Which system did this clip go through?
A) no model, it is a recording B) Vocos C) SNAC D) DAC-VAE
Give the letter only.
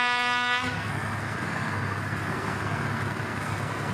C